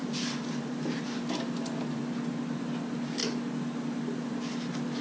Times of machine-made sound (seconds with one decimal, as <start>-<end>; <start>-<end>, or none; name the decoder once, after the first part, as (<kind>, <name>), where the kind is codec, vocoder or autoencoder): 0.0-2.0 (vocoder, BigVGAN v2)